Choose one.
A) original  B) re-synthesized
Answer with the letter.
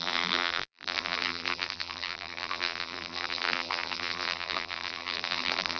B